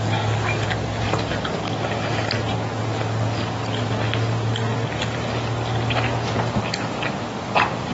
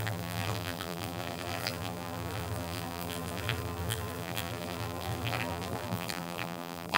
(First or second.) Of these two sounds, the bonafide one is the first